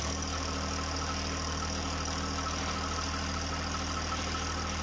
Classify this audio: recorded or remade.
recorded